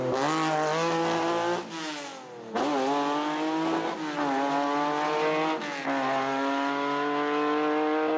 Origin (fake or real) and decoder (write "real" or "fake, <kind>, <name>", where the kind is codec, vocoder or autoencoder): real